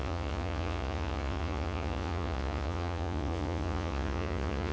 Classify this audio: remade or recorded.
remade